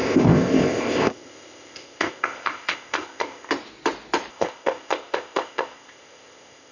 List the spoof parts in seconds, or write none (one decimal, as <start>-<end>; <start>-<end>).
0.0-3.5; 4.3-6.7